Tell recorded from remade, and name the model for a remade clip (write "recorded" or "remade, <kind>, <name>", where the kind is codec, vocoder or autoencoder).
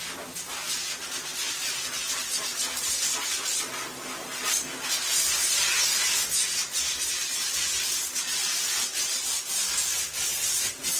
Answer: recorded